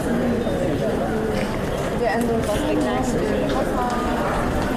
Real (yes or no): yes